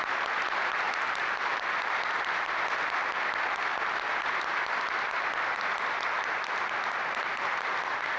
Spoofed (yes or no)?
no